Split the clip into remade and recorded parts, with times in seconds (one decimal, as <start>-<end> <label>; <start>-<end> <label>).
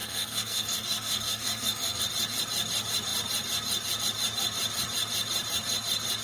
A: 0.0-2.0 remade; 2.0-6.2 recorded